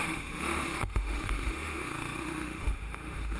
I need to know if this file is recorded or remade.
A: remade